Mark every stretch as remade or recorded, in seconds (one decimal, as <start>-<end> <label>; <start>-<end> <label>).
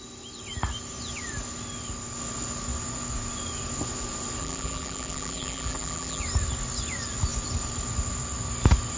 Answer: 0.0-4.4 recorded; 4.4-6.2 remade; 6.2-9.0 recorded